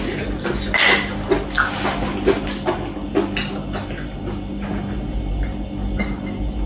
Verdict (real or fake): real